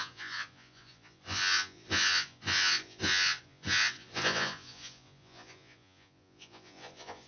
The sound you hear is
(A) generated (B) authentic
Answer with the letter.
A